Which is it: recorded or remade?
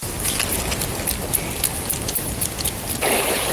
recorded